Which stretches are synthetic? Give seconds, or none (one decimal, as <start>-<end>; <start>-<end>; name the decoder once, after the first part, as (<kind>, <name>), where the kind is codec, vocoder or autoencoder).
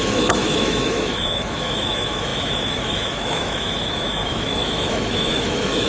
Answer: 0.0-5.9 (autoencoder, DAC-VAE)